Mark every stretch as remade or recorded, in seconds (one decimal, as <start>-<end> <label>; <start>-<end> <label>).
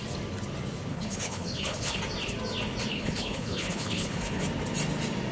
0.0-0.9 recorded; 0.9-2.0 remade; 2.0-2.9 recorded; 2.9-4.4 remade; 4.4-5.3 recorded